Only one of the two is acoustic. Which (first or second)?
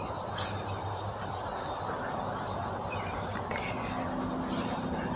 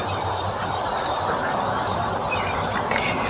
first